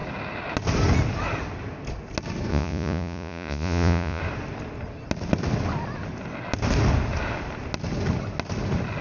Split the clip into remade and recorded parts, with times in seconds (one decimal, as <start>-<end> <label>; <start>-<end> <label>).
0.0-2.5 recorded; 2.5-4.2 remade; 4.2-9.0 recorded